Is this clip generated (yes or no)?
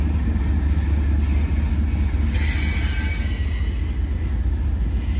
no